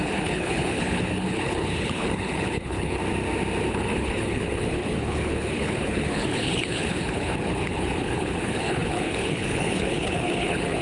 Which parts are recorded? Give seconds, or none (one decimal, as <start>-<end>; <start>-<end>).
3.0-3.7